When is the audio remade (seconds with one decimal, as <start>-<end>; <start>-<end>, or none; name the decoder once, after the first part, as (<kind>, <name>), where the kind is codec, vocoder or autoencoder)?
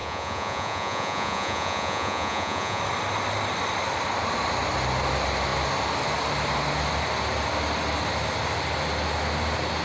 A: 0.0-2.8 (vocoder, Vocos)